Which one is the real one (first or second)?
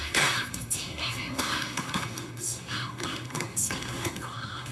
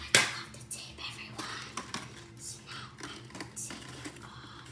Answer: second